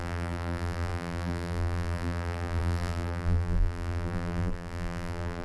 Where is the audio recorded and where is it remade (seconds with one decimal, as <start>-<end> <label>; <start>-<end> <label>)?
0.0-5.4 remade